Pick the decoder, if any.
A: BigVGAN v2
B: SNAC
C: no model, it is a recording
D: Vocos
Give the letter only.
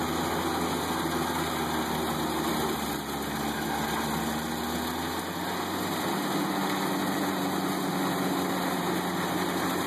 C